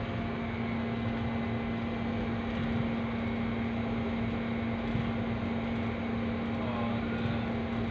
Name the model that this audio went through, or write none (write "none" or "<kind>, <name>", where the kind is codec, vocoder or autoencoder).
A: none